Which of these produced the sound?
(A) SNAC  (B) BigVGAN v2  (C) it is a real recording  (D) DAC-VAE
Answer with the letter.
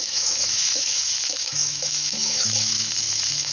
D